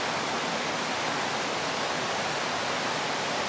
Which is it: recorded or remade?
recorded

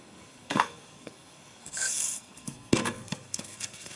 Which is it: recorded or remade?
remade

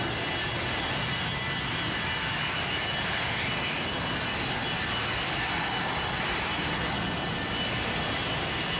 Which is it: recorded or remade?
recorded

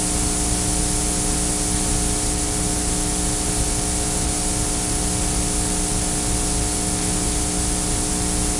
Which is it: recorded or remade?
recorded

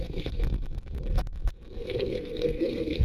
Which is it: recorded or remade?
remade